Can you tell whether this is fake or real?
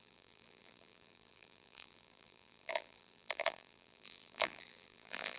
fake